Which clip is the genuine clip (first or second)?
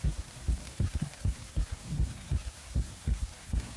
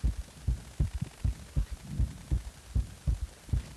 second